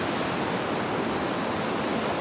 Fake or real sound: real